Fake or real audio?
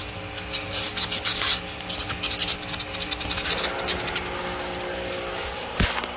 real